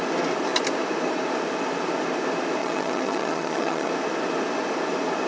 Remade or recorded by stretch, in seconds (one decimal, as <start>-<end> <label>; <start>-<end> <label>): 0.0-2.6 recorded; 2.6-3.9 remade; 3.9-5.3 recorded